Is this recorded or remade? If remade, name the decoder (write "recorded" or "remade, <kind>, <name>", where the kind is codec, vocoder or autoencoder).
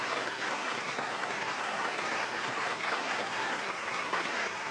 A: remade, codec, SNAC